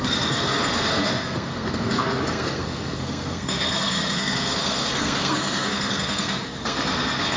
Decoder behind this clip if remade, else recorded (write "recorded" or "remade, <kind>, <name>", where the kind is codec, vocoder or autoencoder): remade, codec, SNAC